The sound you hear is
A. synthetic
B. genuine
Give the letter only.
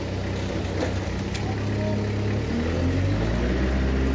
B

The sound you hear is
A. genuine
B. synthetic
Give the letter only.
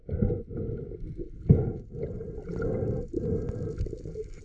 A